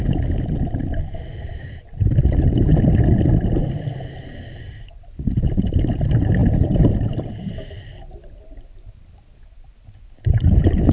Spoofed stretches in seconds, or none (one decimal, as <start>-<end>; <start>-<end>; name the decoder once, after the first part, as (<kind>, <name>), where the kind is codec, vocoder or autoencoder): none